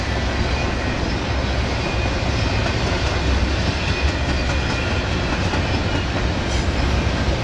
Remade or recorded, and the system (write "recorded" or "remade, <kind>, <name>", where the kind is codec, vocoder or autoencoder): recorded